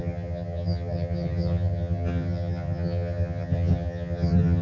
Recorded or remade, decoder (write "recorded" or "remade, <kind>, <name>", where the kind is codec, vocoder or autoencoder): remade, vocoder, HiFi-GAN